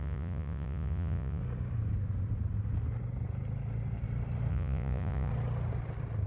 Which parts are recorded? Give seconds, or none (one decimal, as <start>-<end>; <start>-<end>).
1.4-4.5; 5.3-6.3